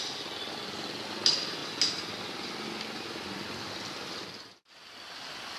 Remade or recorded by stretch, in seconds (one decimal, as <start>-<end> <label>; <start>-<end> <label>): 0.0-5.6 recorded